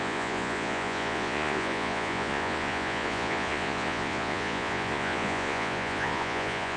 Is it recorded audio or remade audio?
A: remade